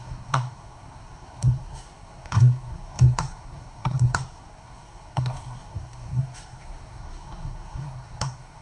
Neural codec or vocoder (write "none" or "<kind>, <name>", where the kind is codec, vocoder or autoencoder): codec, SNAC